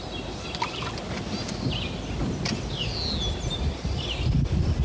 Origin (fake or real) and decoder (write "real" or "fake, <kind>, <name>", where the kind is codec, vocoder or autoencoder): real